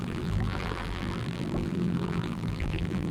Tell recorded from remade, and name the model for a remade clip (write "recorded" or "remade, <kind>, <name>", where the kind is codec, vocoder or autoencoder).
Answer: remade, vocoder, BigVGAN v2